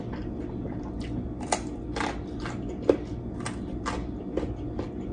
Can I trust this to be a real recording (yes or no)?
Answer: yes